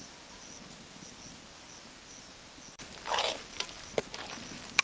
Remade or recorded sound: recorded